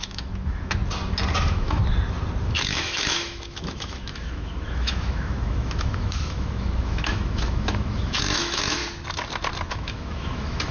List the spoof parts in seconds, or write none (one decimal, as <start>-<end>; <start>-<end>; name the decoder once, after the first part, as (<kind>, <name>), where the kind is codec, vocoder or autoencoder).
0.0-0.8 (autoencoder, DAC-VAE); 1.4-1.8; 2.4-8.8; 9.7-10.7